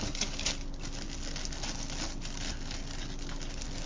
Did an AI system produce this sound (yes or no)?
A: no